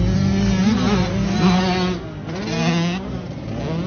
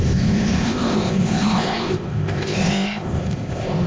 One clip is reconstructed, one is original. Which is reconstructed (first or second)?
second